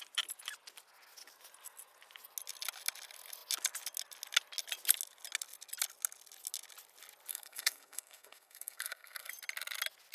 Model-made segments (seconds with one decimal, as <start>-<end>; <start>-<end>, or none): 7.3-9.3